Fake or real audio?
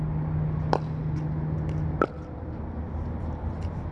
real